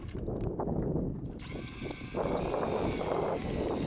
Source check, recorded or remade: recorded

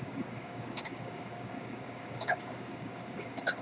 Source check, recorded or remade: remade